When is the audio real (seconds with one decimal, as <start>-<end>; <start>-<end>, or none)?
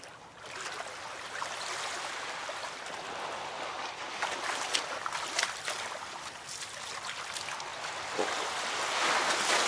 0.0-7.7; 8.3-9.7